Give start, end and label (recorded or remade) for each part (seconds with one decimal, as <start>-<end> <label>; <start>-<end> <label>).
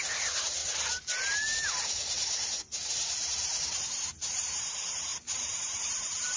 0.0-6.4 recorded